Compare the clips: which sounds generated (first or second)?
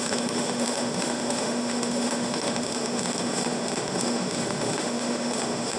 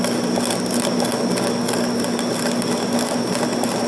first